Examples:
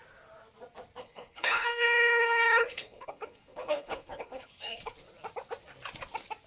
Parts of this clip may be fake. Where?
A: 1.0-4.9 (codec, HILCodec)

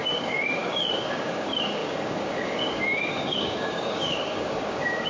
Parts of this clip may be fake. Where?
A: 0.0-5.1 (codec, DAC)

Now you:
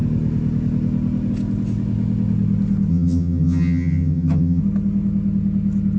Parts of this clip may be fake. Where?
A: 2.9-4.6 (vocoder, HiFi-GAN)

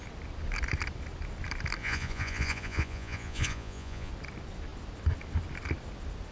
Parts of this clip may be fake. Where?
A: 1.8-4.1 (vocoder, Vocos)

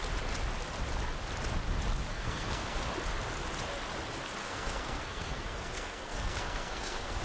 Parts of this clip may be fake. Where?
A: 2.1-2.9 (codec, SNAC); 4.4-7.2

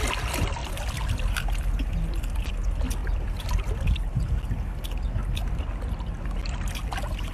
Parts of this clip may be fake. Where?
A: 0.6-2.5 (vocoder, BigVGAN v2); 3.0-4.3; 5.2-5.7

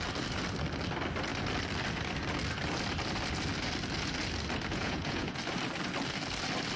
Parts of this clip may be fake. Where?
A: 4.7-5.4 (vocoder, Vocos)